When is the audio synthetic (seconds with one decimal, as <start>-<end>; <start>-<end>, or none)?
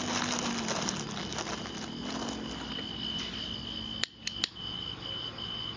none